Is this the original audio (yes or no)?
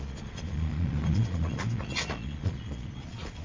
no